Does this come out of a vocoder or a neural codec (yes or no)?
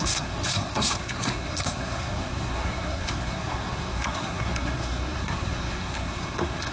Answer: yes